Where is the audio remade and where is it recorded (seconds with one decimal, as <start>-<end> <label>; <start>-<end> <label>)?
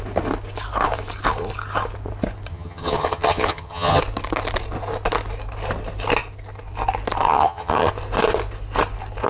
0.0-2.5 recorded; 2.5-4.0 remade; 4.0-7.2 recorded; 7.2-7.9 remade; 7.9-9.3 recorded